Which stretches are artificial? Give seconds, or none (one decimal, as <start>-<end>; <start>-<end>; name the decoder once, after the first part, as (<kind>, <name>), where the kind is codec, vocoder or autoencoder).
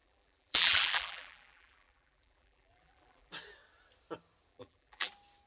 0.0-3.3 (vocoder, BigVGAN v2); 4.5-5.1